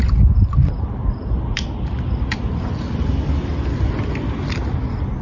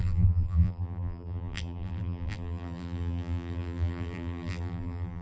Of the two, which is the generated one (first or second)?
second